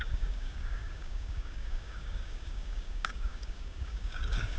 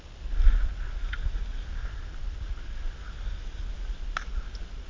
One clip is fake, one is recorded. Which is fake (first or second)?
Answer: first